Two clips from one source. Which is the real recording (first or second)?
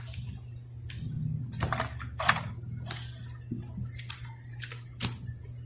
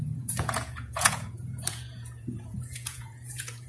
first